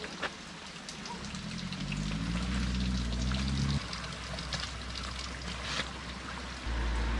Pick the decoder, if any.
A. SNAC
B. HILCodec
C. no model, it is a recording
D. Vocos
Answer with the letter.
C